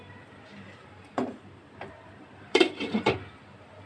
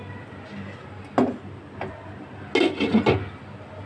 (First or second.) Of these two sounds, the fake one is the first